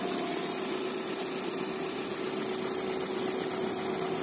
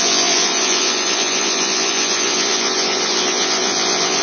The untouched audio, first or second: first